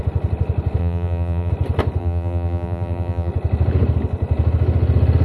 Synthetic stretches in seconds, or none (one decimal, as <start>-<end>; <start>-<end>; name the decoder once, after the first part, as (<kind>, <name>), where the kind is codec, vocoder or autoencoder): 0.8-1.5 (vocoder, BigVGAN v2); 2.0-3.3